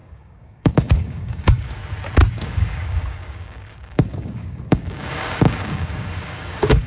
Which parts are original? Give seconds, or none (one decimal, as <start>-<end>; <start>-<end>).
1.8-2.3

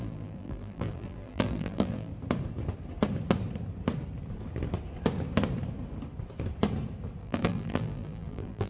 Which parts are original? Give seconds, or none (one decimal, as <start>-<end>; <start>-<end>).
2.1-7.2

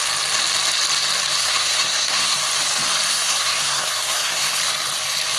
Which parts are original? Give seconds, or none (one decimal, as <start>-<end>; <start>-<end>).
0.0-1.4; 2.4-3.1; 4.5-5.4

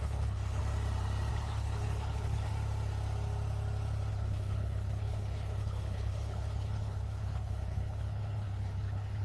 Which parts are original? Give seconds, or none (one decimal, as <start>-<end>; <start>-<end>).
0.6-1.3; 2.5-4.1

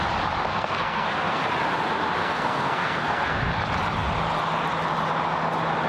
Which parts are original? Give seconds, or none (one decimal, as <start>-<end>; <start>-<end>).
0.0-0.5; 1.4-2.2; 3.4-5.9

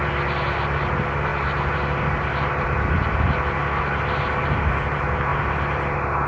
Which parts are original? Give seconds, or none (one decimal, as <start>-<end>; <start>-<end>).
0.0-6.3

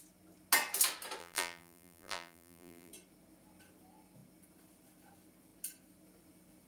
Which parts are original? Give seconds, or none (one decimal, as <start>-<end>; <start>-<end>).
0.0-1.2; 2.9-6.7